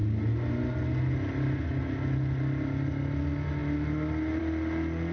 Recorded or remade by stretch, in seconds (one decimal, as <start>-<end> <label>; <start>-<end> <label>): 0.0-5.1 recorded